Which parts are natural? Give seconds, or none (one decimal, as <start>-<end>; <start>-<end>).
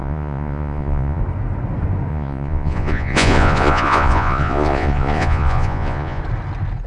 1.2-2.1; 6.2-6.9